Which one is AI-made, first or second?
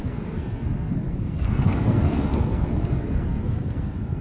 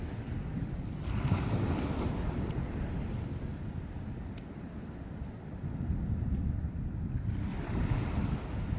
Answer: first